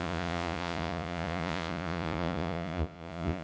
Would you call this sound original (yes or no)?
no